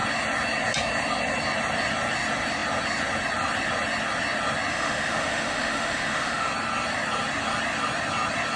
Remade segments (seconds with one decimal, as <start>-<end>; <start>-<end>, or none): 4.7-6.5